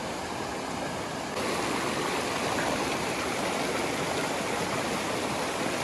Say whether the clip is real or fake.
real